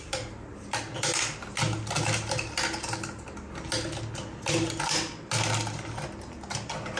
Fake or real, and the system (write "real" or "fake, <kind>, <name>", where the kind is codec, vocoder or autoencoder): real